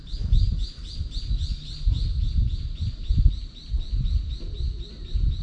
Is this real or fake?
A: real